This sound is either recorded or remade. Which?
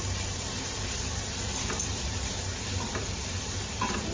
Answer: remade